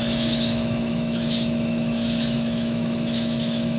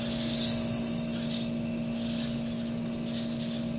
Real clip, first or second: second